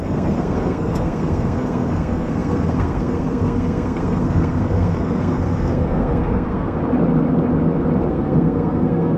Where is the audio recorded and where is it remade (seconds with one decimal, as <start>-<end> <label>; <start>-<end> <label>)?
0.0-6.8 remade; 6.8-8.1 recorded; 8.1-9.2 remade

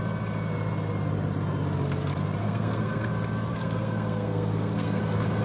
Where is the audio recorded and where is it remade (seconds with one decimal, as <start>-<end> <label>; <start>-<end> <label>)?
0.0-2.4 recorded; 2.4-3.1 remade; 3.1-3.5 recorded; 3.5-5.0 remade; 5.0-5.4 recorded

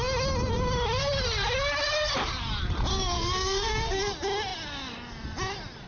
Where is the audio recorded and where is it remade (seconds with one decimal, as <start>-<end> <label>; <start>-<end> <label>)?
0.0-2.9 recorded; 2.9-4.0 remade; 4.0-5.9 recorded

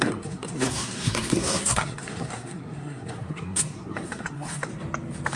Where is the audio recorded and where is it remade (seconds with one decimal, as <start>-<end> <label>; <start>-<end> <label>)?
0.0-4.7 remade; 4.7-5.4 recorded

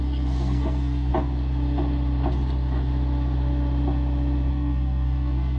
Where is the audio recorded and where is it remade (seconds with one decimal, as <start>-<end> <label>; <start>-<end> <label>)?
0.0-1.1 remade; 1.1-4.5 recorded; 4.5-5.6 remade

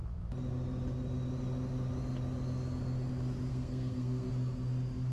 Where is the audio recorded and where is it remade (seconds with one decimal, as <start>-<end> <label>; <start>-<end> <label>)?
0.0-3.5 recorded; 3.5-4.3 remade; 4.3-5.1 recorded

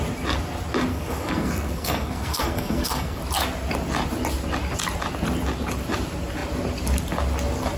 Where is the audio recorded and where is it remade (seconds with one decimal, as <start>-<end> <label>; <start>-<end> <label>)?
0.0-0.9 recorded; 0.9-3.2 remade; 3.2-7.8 recorded